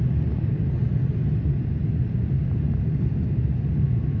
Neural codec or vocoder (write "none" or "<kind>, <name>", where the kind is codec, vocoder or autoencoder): none